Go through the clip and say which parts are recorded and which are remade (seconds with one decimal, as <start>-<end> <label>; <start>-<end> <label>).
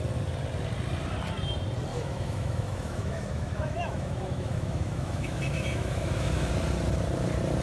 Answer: 0.0-1.9 recorded; 1.9-6.5 remade; 6.5-7.6 recorded